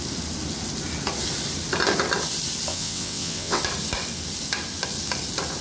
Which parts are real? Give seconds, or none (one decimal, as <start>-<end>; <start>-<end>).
0.0-2.7; 3.6-5.6